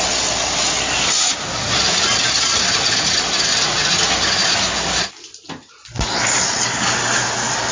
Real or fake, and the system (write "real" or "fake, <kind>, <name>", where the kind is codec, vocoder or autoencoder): real